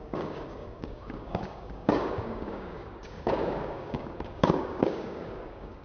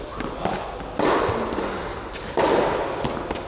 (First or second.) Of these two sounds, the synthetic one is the first